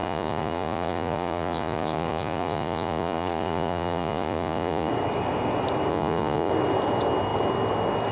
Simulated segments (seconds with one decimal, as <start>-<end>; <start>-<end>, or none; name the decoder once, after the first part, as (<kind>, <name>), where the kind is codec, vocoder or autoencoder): 0.0-4.9 (vocoder, Vocos); 5.9-6.5